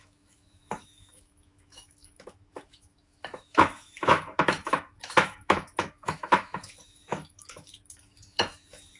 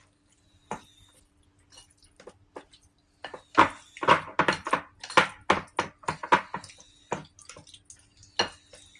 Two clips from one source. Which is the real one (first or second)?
second